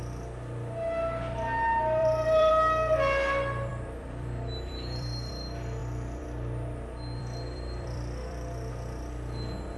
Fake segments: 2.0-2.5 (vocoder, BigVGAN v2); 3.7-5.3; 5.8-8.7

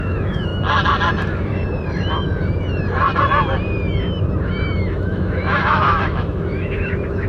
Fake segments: 0.0-0.5 (autoencoder, DAC-VAE); 1.2-1.6; 4.8-7.3

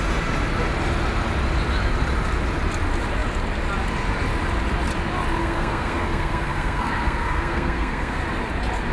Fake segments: 5.4-8.2 (codec, SNAC)

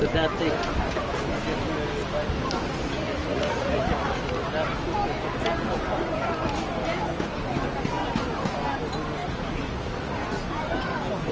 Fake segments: 3.2-4.3 (vocoder, Vocos); 9.2-10.5

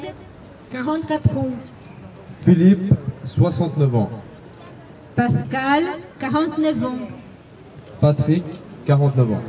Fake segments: 0.7-1.3 (codec, SNAC)